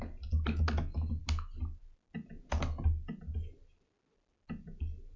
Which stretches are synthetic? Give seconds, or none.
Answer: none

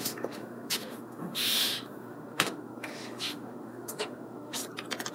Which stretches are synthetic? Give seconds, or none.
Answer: 0.0-4.6 (autoencoder, DAC-VAE)

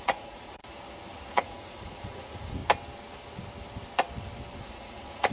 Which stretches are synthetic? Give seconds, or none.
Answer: 0.0-0.6 (vocoder, Vocos); 1.3-2.6; 4.6-5.3

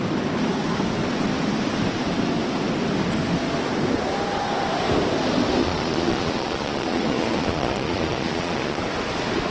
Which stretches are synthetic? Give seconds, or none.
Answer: 5.6-8.8 (vocoder, Vocos)

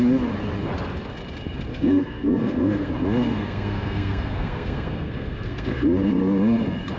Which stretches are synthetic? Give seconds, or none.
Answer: 1.7-2.9 (codec, SNAC); 3.3-5.7

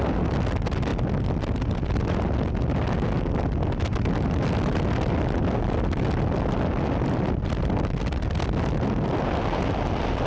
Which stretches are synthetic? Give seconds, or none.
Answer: none

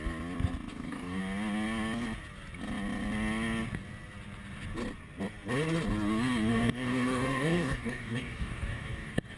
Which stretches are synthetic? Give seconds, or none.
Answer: 0.7-1.2 (codec, DAC); 6.5-9.4